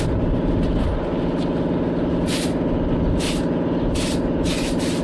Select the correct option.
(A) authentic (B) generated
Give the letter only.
A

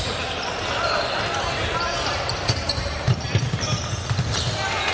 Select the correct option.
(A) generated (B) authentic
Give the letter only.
A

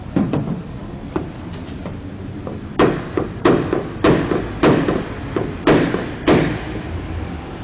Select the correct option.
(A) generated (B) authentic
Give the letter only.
A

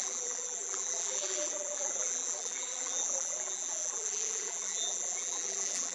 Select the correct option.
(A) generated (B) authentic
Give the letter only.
A